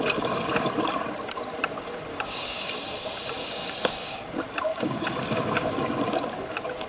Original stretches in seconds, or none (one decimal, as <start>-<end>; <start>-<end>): 0.0-2.1; 2.7-3.4; 4.3-4.7; 5.8-6.9